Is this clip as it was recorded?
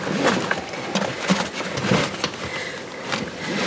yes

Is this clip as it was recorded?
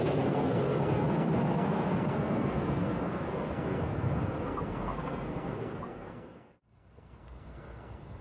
no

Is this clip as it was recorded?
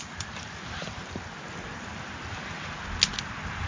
yes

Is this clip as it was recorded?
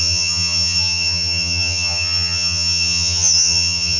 no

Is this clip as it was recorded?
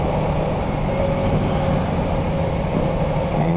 yes